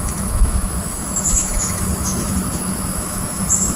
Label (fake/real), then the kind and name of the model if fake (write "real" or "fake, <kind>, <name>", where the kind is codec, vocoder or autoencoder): fake, autoencoder, DAC-VAE